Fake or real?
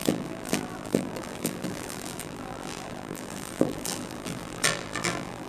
fake